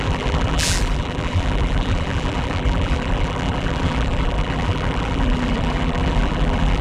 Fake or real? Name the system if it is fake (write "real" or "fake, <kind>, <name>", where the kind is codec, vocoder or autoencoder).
fake, vocoder, BigVGAN v2